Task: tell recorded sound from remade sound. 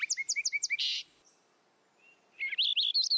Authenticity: recorded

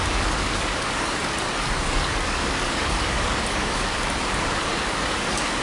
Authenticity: remade